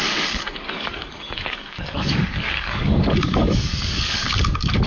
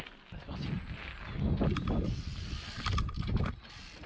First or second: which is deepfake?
first